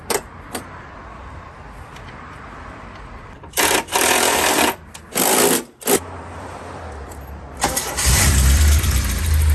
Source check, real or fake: fake